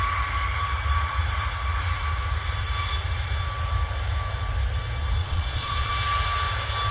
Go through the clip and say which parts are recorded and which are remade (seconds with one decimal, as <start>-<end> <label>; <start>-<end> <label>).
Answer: 0.0-5.2 recorded; 5.2-5.9 remade; 5.9-6.9 recorded